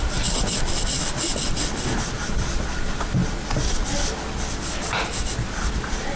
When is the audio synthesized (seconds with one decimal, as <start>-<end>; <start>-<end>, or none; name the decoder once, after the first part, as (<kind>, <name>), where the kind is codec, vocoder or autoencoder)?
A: none